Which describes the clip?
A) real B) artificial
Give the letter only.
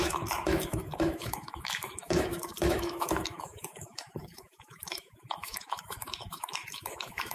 B